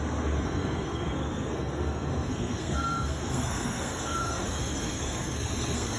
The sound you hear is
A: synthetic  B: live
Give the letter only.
A